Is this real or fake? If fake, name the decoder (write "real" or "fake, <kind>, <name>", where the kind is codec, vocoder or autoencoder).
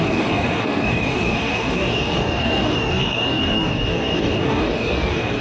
fake, codec, DAC